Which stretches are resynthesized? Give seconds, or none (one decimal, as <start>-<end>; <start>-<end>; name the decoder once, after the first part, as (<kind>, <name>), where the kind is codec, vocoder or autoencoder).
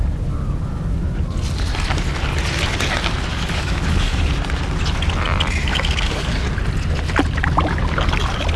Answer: 3.3-4.3 (codec, DAC); 5.7-6.5